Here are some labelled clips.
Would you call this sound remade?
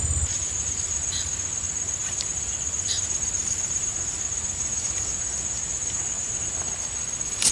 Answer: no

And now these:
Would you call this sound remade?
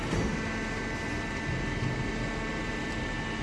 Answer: no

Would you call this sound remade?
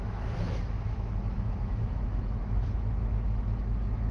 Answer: yes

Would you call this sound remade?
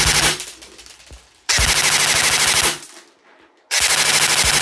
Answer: no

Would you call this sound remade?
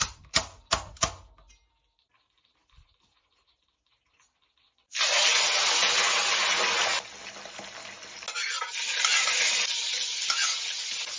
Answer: no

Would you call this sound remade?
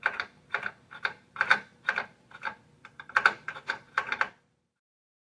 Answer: yes